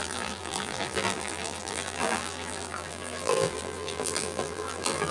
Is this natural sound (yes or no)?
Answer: no